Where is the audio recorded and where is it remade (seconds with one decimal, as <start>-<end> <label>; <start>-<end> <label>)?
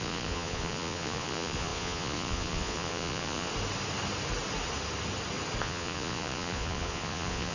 0.0-3.5 remade; 3.5-5.6 recorded; 5.6-7.5 remade